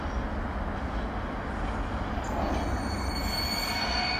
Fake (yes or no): no